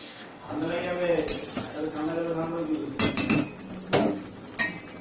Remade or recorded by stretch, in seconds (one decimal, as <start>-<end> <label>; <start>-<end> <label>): 0.0-0.5 remade; 0.5-5.0 recorded